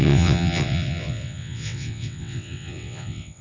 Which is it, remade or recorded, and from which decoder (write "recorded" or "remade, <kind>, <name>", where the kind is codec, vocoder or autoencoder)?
remade, vocoder, WaveNeXt